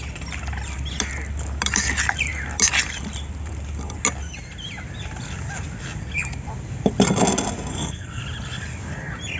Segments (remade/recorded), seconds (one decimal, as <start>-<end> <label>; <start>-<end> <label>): 0.0-7.7 recorded; 7.7-8.2 remade; 8.2-9.4 recorded